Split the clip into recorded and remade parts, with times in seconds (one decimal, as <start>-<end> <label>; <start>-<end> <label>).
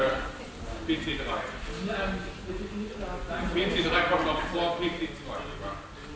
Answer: 0.0-6.2 recorded